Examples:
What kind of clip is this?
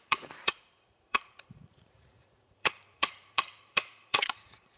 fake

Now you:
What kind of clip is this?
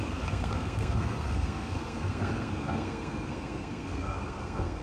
fake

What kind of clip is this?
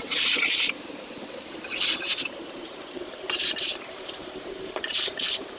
fake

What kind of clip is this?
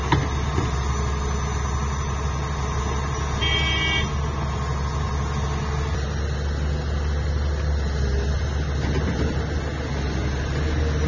real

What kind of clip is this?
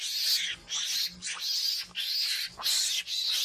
real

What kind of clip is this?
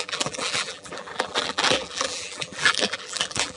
fake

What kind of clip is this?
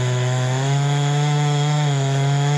fake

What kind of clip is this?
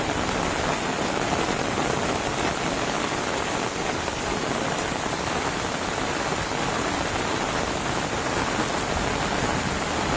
real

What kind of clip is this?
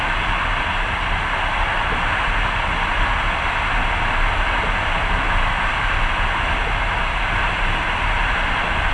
real